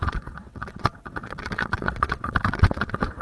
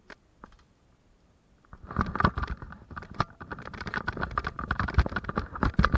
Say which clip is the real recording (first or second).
second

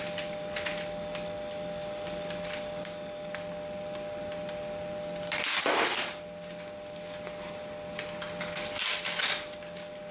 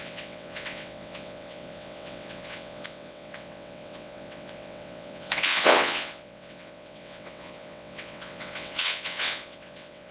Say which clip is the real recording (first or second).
first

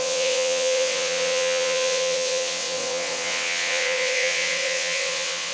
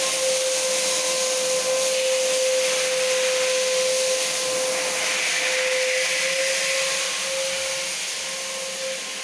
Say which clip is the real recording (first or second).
second